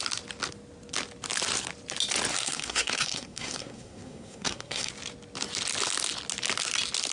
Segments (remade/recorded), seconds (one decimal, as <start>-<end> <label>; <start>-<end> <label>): 0.0-2.3 recorded; 2.3-4.9 remade; 4.9-7.1 recorded